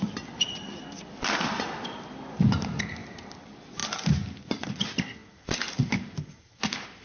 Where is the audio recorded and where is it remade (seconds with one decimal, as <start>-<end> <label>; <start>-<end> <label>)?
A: 0.0-5.2 recorded; 5.2-7.0 remade